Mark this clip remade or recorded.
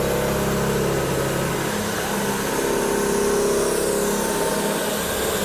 recorded